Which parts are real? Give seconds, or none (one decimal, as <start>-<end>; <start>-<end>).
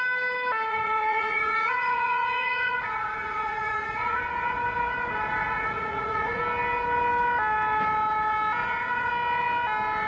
0.0-0.7; 4.2-5.4; 6.4-8.6; 9.1-10.1